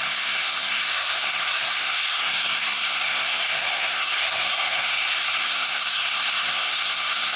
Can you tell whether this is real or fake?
fake